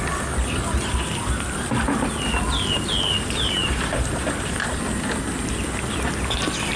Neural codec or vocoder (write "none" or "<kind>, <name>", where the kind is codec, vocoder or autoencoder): none